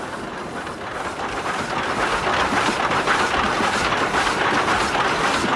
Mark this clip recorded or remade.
recorded